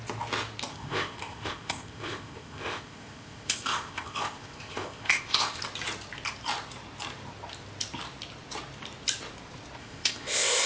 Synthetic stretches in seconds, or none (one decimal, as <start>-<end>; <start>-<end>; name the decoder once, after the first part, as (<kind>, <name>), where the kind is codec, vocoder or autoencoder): 0.7-5.6 (codec, ZipCodec); 9.8-10.7

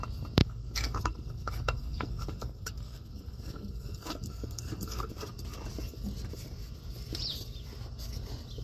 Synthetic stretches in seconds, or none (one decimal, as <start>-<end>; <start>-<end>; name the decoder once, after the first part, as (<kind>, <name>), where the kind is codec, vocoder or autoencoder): 0.4-5.1 (codec, SNAC)

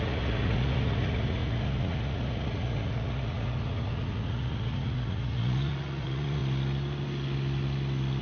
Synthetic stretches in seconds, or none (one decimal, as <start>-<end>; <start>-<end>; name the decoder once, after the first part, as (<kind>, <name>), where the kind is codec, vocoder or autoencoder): 0.0-6.4 (vocoder, Vocos)

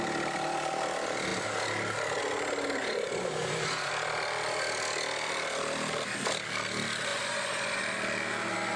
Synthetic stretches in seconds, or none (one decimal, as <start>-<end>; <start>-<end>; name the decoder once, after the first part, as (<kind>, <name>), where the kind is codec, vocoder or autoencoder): 2.8-3.9 (vocoder, Vocos); 7.1-7.8

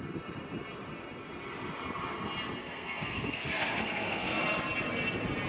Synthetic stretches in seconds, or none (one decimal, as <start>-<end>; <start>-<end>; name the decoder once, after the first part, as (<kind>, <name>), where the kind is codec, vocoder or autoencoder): 2.6-4.4 (codec, SNAC)

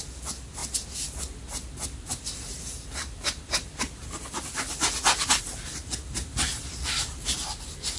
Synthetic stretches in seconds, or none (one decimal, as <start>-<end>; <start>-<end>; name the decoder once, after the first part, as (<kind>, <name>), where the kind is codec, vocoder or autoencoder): none

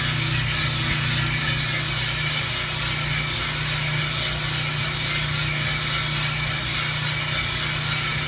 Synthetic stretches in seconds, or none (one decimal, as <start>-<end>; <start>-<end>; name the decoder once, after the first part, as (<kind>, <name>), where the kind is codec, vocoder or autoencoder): none